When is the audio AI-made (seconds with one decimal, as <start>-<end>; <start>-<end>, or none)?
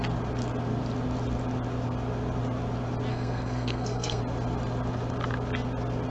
3.1-4.2